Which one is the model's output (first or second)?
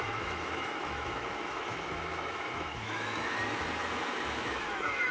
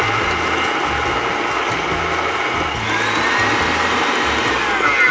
first